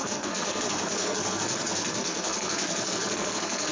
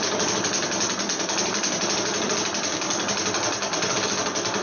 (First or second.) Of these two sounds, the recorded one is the second